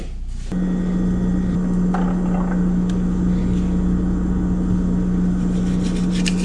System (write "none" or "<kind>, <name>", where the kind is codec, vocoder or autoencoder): none